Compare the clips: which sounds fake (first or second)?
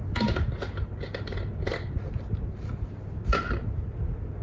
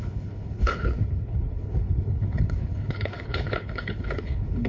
second